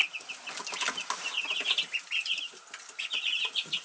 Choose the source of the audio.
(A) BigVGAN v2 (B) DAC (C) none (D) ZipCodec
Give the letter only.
C